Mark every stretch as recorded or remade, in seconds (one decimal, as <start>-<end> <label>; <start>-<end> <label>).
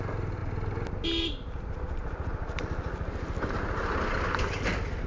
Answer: 0.0-5.1 recorded